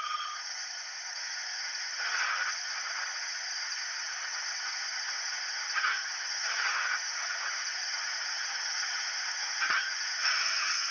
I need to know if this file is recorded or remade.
remade